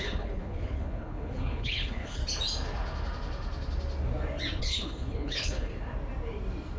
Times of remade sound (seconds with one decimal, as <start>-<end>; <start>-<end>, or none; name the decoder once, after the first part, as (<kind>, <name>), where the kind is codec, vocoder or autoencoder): 0.0-2.2 (codec, HILCodec); 4.6-5.7